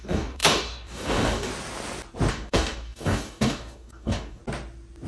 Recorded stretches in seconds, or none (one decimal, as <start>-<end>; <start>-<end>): 1.5-2.3; 4.4-5.1